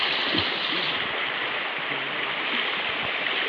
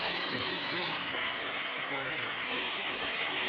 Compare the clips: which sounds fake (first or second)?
second